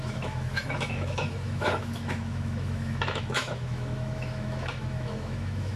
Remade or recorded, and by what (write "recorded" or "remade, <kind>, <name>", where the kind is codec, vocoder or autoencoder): remade, autoencoder, DAC-VAE